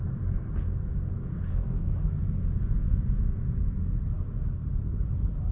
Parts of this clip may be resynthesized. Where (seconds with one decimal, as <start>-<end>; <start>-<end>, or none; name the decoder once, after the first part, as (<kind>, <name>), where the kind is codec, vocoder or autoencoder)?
1.5-2.1 (codec, SNAC)